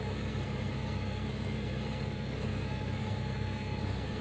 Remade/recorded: remade